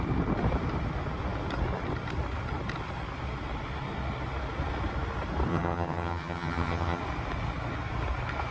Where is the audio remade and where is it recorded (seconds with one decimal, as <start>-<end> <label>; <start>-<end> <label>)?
0.0-5.5 recorded; 5.5-7.0 remade; 7.0-8.5 recorded